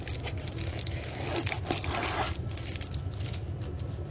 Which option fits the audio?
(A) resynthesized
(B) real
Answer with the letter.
B